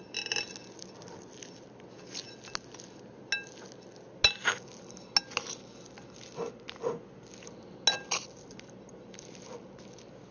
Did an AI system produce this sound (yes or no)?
no